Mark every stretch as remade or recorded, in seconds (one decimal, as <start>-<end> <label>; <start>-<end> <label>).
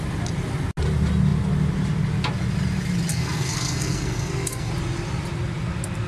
0.0-3.1 recorded; 3.1-4.7 remade; 4.7-6.1 recorded